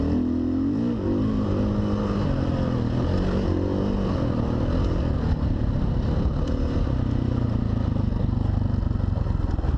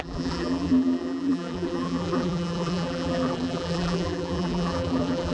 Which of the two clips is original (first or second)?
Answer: first